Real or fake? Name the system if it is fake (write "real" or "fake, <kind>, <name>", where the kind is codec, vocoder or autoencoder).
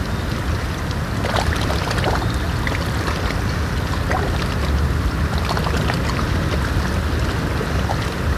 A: real